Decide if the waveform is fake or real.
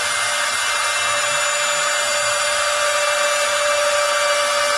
real